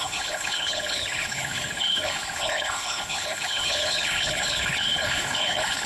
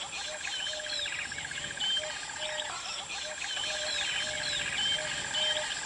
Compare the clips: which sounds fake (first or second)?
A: first